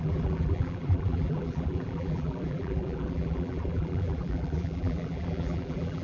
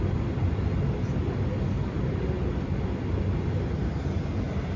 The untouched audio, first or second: second